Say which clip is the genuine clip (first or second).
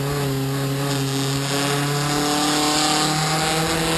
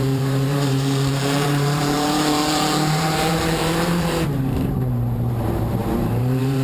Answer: first